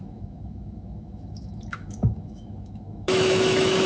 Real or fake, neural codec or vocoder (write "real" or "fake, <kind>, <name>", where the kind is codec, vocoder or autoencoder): fake, autoencoder, DAC-VAE